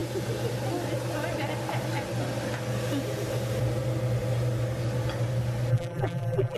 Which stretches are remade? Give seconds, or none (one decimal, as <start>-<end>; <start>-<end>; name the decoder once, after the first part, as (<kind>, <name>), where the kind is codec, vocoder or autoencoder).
5.7-6.6 (vocoder, BigVGAN v2)